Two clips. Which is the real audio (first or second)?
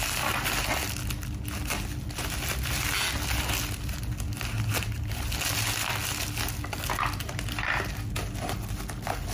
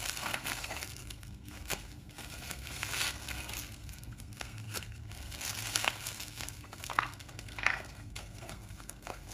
first